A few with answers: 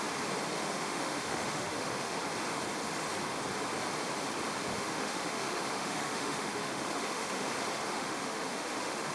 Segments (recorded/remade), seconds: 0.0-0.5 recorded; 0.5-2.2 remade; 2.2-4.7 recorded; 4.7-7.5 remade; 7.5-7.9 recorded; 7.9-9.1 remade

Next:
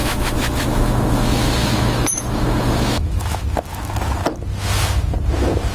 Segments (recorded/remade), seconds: 0.0-3.4 remade; 3.4-5.7 recorded

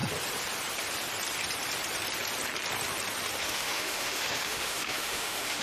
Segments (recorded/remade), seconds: 0.0-3.4 recorded; 3.4-5.6 remade

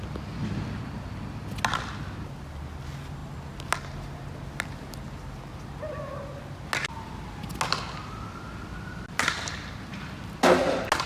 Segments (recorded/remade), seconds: 0.0-11.1 recorded

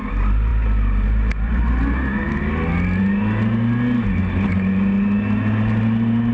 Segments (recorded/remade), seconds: 0.0-6.3 recorded